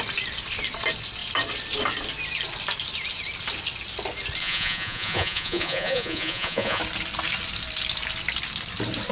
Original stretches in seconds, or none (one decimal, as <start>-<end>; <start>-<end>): 0.0-4.4; 6.8-9.1